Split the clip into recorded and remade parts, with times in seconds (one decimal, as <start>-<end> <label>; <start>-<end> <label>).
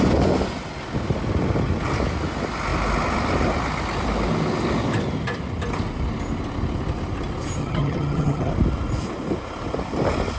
0.0-7.6 recorded; 7.6-8.5 remade; 8.5-10.4 recorded